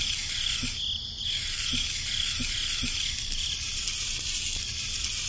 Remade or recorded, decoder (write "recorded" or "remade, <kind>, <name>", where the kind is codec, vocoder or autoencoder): recorded